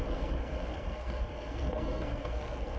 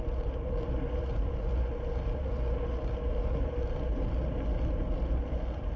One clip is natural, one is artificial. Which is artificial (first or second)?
first